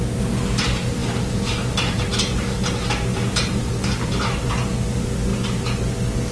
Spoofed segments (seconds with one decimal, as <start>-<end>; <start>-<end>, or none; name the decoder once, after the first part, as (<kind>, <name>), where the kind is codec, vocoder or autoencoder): 1.0-2.7 (vocoder, BigVGAN v2); 3.1-4.5